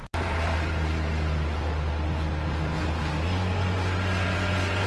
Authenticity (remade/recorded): recorded